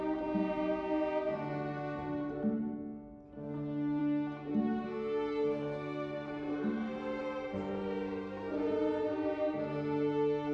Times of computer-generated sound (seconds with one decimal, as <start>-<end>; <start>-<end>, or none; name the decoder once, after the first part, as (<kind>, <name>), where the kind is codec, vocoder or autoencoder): none